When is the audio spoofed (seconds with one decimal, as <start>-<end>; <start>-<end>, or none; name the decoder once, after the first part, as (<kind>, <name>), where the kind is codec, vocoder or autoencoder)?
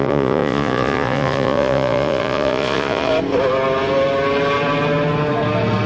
0.0-3.1 (vocoder, Vocos)